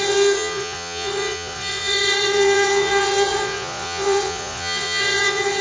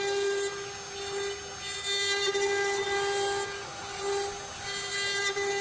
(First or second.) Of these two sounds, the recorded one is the second